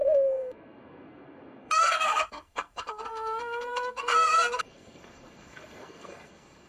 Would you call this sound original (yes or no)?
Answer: no